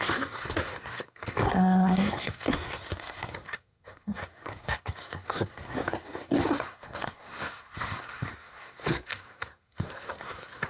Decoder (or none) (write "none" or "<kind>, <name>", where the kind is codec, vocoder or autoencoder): codec, SNAC